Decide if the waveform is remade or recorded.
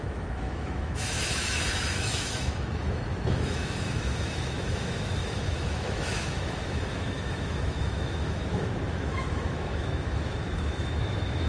remade